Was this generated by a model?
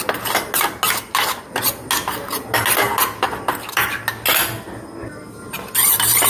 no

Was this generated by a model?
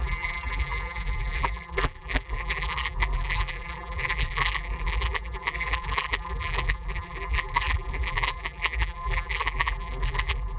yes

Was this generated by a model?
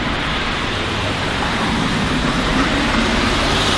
yes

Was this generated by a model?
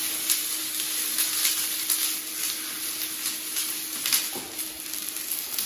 no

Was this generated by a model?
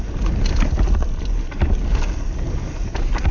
no